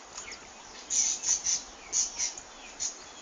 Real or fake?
real